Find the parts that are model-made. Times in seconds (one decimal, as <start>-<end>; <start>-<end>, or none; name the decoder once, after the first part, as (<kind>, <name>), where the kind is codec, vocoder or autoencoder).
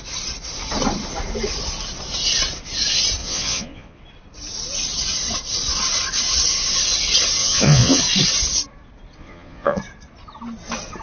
3.2-4.0 (vocoder, Vocos); 7.4-8.0; 9.2-9.8